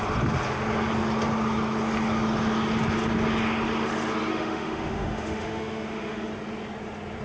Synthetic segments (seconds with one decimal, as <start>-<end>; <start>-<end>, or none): 4.3-6.3